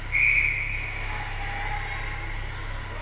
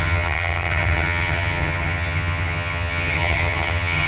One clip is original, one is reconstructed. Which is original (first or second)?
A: first